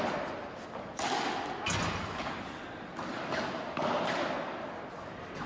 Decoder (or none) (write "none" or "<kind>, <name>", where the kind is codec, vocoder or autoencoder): none